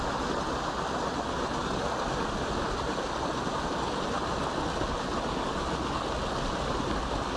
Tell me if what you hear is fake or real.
real